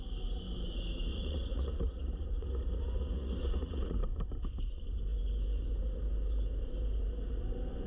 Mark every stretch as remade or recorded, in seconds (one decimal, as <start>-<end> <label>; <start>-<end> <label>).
0.0-1.1 recorded; 1.1-4.0 remade; 4.0-7.9 recorded